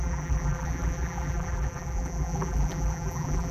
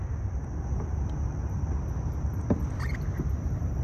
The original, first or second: second